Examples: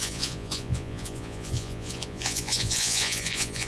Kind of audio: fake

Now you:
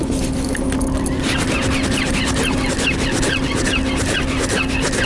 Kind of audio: real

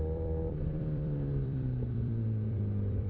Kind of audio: fake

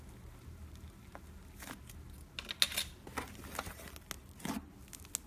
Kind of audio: real